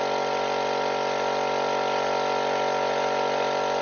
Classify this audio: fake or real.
real